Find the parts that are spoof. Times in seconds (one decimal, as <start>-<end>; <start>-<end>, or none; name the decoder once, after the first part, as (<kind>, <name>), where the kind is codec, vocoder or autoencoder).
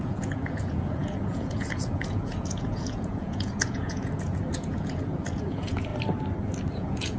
0.0-5.9 (vocoder, Vocos); 6.7-7.2